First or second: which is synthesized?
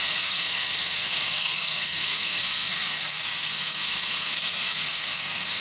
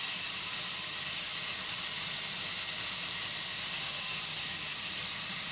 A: first